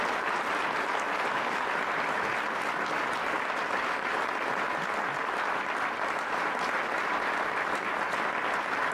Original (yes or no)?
yes